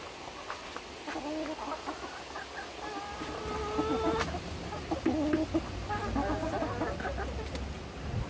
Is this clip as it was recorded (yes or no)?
yes